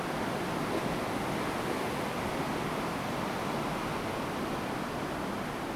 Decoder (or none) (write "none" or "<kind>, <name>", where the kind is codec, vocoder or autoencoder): none